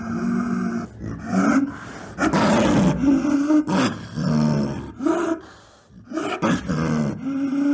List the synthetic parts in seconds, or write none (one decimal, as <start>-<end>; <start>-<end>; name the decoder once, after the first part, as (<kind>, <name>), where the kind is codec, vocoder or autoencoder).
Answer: 5.2-5.9 (vocoder, BigVGAN v2)